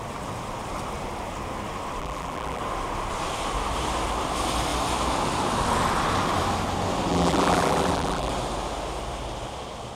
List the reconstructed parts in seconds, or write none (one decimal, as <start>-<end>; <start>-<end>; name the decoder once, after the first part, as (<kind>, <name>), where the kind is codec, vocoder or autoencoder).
2.0-2.6 (vocoder, BigVGAN v2); 7.1-8.3